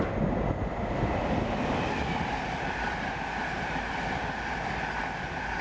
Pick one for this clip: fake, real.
real